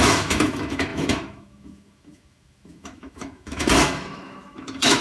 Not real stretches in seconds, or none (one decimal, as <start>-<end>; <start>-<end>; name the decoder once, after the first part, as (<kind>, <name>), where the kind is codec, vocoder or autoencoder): 0.0-5.0 (autoencoder, DAC-VAE)